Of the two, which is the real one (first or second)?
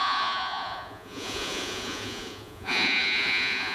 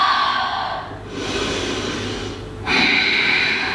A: second